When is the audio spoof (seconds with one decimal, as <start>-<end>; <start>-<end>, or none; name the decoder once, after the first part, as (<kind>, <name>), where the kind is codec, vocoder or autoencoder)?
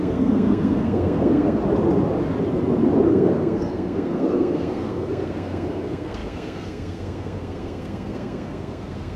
0.0-1.6 (codec, SNAC); 3.1-9.2